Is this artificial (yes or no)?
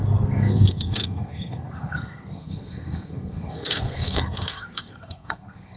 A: yes